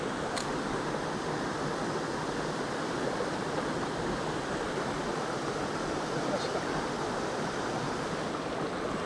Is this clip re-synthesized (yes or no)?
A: no